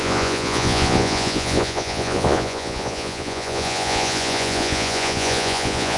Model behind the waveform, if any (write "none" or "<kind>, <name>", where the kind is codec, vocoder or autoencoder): vocoder, Vocos